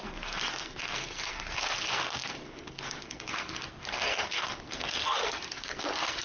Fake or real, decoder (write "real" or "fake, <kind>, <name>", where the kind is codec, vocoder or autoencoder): fake, codec, SNAC